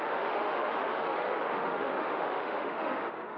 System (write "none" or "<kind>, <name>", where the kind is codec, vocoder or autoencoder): autoencoder, DAC-VAE